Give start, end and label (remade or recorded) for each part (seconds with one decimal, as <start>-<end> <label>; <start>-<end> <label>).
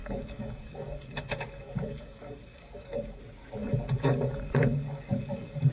0.0-3.2 remade; 3.2-3.6 recorded; 3.6-5.7 remade